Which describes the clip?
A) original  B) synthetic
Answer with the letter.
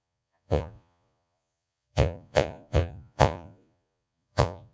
B